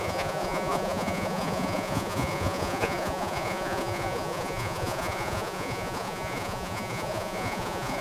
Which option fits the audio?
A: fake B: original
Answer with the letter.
A